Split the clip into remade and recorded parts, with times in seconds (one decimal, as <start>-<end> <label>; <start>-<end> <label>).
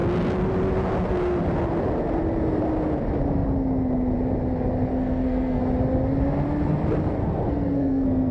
0.0-4.9 recorded; 4.9-5.6 remade; 5.6-7.2 recorded; 7.2-8.3 remade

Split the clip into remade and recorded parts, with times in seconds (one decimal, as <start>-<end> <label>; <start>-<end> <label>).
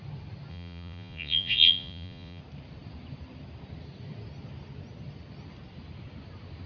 0.0-0.5 recorded; 0.5-2.4 remade; 2.4-6.7 recorded